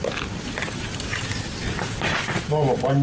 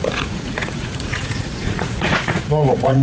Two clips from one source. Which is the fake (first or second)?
second